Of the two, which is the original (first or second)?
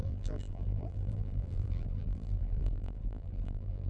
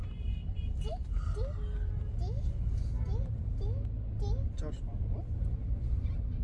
second